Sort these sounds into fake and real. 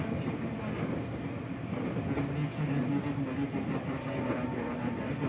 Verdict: real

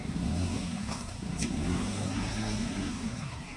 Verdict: fake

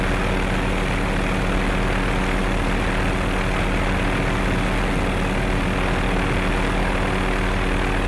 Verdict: real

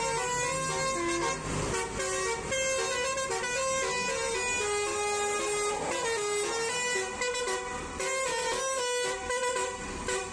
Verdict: real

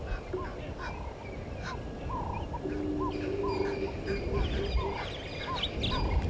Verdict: real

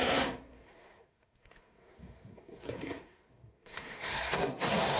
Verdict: fake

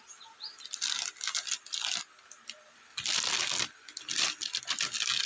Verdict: real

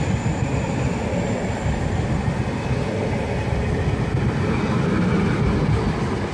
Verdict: real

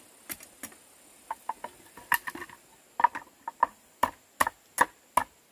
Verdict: real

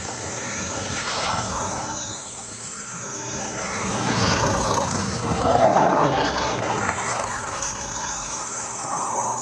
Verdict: fake